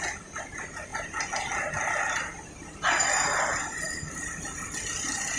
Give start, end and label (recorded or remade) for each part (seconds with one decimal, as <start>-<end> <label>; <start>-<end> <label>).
0.0-5.4 recorded